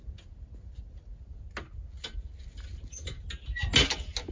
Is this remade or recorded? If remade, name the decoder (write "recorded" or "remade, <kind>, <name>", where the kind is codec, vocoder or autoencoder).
recorded